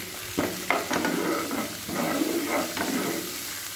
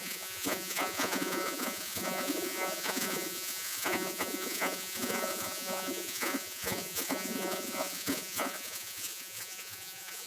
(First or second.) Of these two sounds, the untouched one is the first